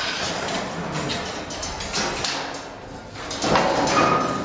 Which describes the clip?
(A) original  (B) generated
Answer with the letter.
A